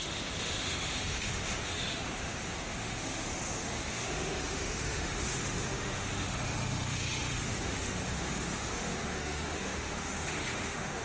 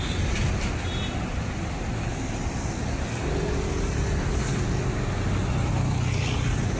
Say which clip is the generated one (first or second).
first